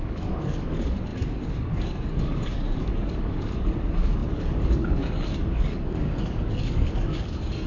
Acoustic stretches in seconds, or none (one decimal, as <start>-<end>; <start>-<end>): none